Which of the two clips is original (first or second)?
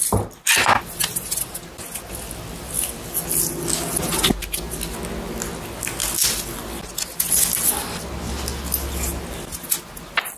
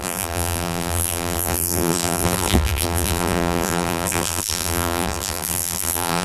first